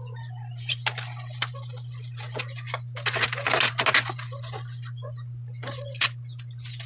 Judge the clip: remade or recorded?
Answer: recorded